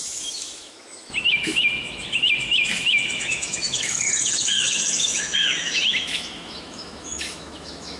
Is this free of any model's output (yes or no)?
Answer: no